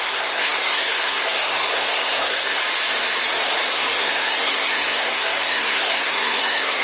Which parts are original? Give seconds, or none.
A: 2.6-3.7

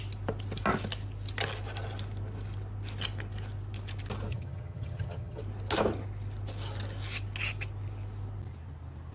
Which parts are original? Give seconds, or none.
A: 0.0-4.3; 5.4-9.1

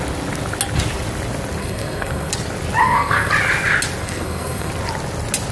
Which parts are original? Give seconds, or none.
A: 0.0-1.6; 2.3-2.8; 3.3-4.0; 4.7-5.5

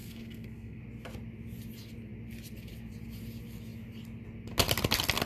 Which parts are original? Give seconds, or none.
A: 0.8-5.3

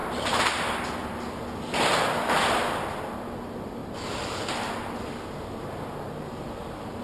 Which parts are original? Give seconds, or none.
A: 0.0-7.0